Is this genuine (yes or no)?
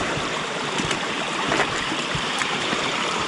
no